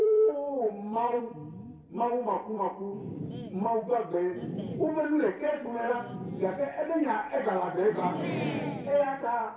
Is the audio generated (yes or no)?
yes